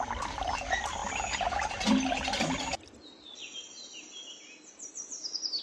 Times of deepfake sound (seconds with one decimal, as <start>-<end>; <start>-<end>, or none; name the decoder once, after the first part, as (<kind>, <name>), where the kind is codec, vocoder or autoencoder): none